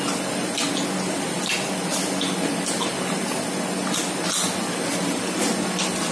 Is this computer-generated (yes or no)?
no